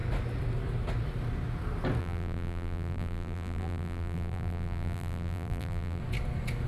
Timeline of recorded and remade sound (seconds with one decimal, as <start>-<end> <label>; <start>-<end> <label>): 0.0-2.0 recorded; 2.0-6.0 remade; 6.0-6.7 recorded